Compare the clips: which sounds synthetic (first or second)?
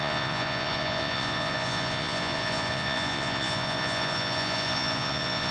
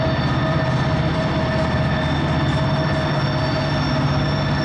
first